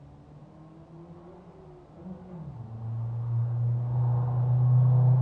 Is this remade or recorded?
recorded